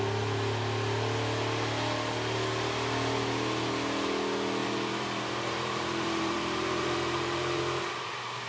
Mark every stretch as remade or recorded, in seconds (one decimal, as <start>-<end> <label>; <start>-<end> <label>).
0.0-4.6 recorded; 4.6-7.6 remade; 7.6-8.5 recorded